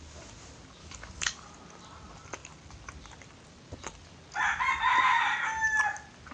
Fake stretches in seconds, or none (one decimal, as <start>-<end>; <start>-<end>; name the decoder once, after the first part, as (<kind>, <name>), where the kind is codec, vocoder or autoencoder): 0.8-1.5 (codec, DAC)